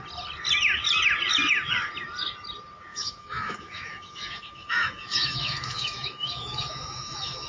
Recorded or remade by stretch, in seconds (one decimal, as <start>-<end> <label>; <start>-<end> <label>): 0.0-2.9 recorded; 2.9-7.5 remade